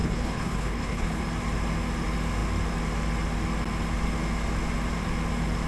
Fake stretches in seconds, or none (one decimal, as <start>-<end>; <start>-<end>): 0.0-1.2